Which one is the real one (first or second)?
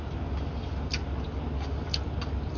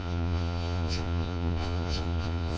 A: first